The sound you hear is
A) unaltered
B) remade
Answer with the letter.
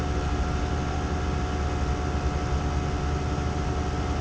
A